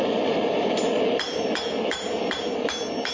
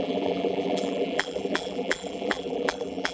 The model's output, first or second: second